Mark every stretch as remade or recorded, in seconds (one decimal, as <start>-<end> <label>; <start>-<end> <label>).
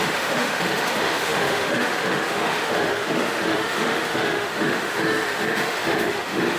0.0-6.6 remade